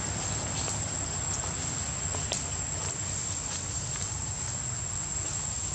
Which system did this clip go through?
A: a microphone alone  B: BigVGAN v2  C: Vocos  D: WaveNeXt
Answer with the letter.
A